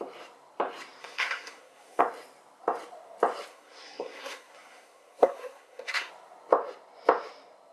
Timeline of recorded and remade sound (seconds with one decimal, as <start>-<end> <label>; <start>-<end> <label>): 0.0-1.0 recorded; 1.0-2.0 remade; 2.0-3.5 recorded; 3.5-6.1 remade; 6.1-7.7 recorded